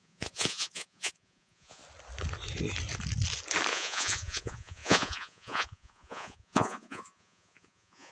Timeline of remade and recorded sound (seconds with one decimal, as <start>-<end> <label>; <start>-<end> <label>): 0.0-1.8 remade; 1.8-3.7 recorded; 3.7-8.1 remade